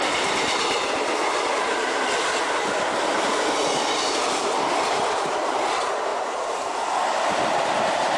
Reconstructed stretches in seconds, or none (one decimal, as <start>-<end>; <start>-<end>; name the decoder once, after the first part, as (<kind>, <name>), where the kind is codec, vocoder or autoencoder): none